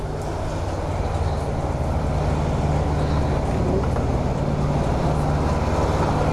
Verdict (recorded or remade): recorded